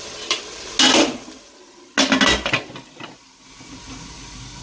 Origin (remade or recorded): recorded